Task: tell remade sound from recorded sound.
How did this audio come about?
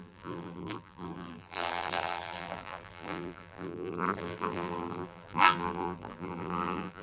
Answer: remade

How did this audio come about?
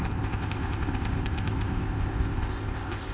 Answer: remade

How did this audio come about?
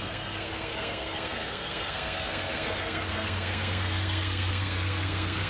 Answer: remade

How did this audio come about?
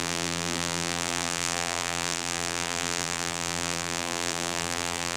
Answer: remade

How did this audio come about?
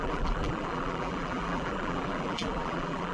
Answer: remade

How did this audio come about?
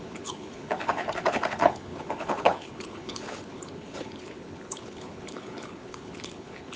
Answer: remade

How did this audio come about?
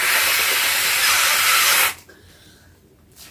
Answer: recorded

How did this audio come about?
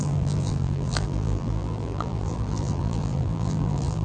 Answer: remade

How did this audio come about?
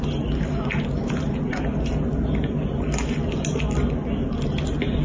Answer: recorded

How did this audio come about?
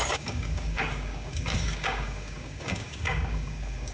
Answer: remade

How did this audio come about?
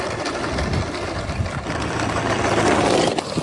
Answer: recorded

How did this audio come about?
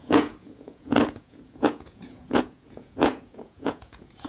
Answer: remade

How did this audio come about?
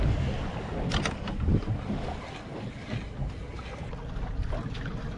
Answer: recorded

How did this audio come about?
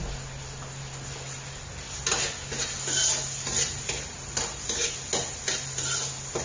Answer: recorded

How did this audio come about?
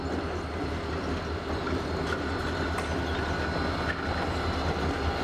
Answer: recorded